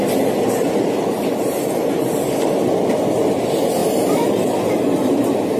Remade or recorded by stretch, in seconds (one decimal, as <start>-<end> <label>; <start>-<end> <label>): 0.0-5.6 recorded